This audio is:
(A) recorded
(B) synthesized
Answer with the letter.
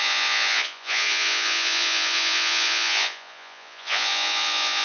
B